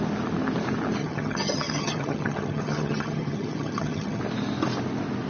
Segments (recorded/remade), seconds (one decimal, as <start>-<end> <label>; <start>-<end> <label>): 0.0-1.0 recorded; 1.0-4.2 remade; 4.2-5.3 recorded